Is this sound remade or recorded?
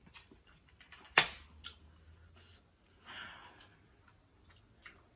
recorded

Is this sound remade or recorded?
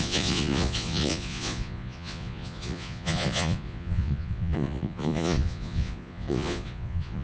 remade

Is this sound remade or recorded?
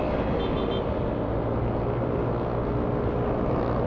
recorded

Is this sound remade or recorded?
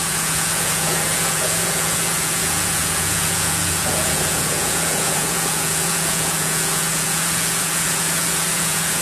remade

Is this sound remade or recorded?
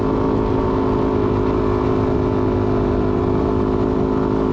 recorded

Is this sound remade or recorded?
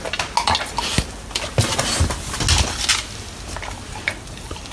recorded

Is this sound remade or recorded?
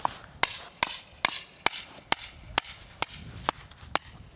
recorded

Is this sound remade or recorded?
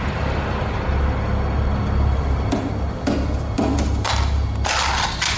recorded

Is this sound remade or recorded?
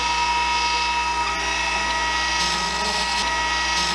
recorded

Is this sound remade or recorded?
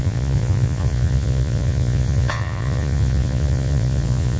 remade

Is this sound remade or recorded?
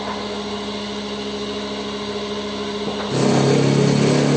recorded